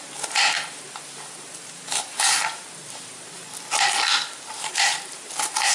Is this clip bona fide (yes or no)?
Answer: yes